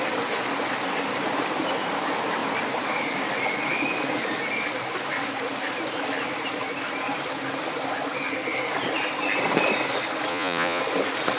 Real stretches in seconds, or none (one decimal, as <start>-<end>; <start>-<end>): 0.0-10.3; 10.8-11.4